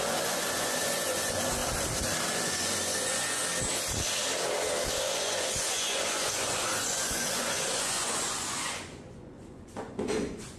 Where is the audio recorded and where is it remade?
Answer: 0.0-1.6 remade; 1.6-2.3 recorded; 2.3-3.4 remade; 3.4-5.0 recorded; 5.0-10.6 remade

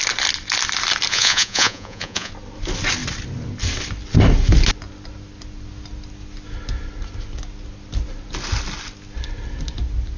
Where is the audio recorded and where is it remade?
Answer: 0.0-1.1 recorded; 1.1-2.3 remade; 2.3-10.2 recorded

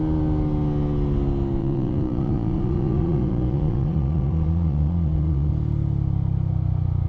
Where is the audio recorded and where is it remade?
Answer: 0.0-1.6 recorded; 1.6-5.5 remade; 5.5-7.1 recorded